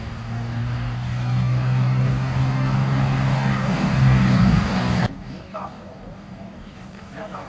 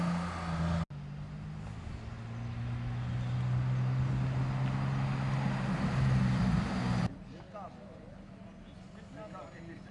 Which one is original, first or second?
second